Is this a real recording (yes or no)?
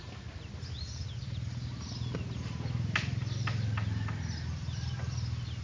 yes